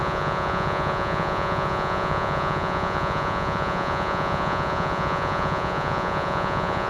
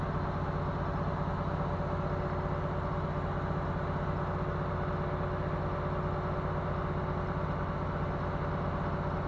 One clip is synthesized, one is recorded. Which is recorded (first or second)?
second